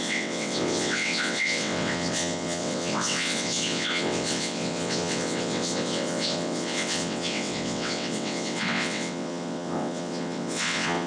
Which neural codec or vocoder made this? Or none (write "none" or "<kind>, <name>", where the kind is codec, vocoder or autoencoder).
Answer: vocoder, WaveNeXt